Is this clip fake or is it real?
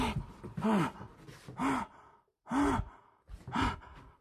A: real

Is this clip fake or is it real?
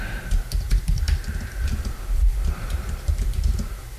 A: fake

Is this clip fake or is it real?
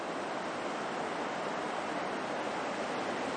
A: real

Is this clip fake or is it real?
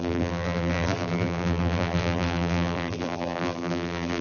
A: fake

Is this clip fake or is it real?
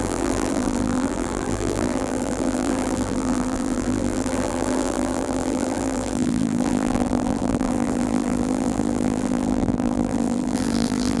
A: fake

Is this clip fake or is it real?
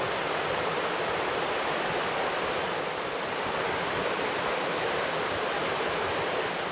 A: fake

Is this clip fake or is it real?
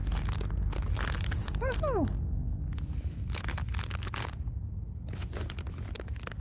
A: real